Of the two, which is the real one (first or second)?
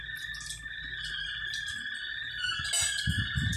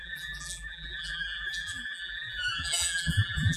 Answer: first